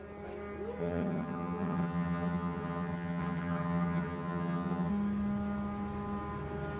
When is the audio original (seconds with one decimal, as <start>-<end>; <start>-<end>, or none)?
0.0-0.8; 4.9-6.8